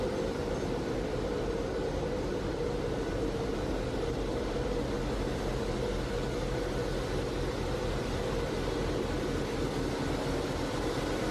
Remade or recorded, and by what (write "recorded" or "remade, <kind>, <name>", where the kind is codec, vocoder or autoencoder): recorded